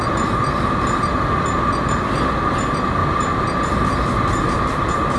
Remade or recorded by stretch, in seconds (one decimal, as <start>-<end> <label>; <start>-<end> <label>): 0.0-5.2 recorded